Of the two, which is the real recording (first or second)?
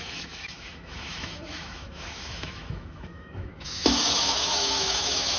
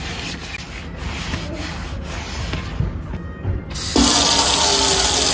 second